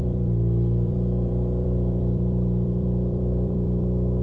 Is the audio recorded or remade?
remade